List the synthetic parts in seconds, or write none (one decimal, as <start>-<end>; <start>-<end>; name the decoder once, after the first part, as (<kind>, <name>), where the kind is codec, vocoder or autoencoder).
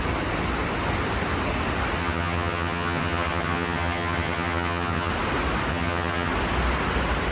2.0-5.1 (vocoder, HiFi-GAN); 5.7-6.3